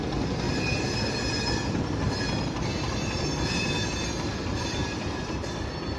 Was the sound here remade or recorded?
recorded